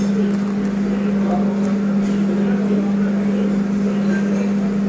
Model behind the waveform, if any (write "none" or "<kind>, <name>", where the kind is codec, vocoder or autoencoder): none